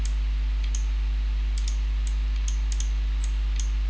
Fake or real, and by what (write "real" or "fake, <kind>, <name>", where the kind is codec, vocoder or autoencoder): real